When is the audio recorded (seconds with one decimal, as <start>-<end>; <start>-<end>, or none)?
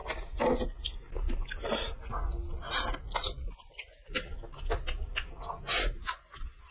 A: 0.0-6.7